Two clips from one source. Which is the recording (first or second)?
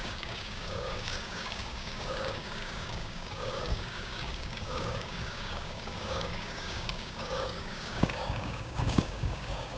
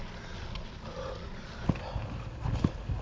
second